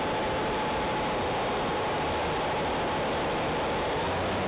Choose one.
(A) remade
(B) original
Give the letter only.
B